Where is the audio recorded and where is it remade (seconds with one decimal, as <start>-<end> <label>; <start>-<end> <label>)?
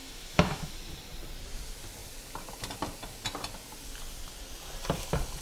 0.0-0.7 remade; 0.7-5.4 recorded